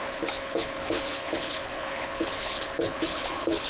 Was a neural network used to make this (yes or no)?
yes